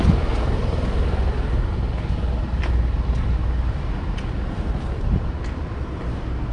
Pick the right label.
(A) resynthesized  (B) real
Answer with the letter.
B